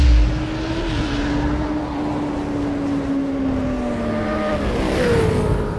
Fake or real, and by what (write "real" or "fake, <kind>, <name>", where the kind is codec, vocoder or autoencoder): real